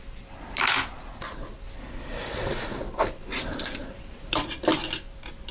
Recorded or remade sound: recorded